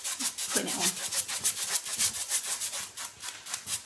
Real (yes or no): yes